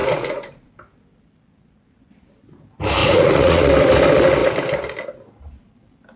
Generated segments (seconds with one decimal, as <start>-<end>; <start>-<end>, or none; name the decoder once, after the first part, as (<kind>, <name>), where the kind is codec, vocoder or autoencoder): 0.0-0.7 (vocoder, Vocos); 3.0-3.7